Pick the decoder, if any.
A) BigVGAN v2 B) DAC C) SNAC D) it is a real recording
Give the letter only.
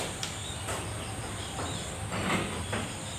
A